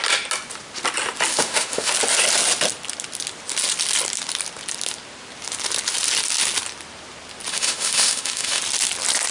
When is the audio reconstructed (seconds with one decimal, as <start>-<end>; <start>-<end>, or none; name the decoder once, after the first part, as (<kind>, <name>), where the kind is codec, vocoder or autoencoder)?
1.3-1.9 (autoencoder, DAC-VAE); 7.5-8.6